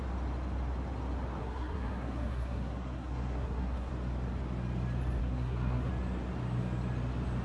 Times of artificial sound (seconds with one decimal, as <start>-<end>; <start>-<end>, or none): 1.4-3.9; 5.2-5.9